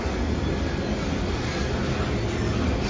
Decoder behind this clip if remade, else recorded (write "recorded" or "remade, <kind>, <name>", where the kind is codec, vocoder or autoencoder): recorded